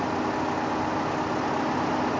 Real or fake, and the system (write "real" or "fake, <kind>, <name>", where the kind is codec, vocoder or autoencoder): real